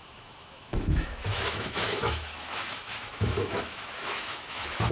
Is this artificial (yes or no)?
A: yes